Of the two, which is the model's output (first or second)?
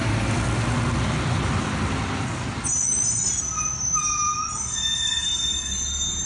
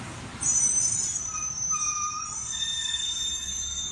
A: second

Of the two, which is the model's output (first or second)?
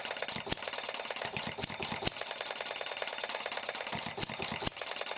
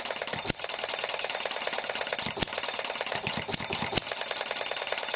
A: second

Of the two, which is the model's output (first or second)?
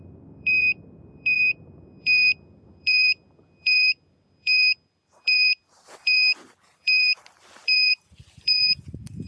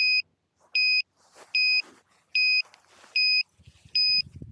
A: first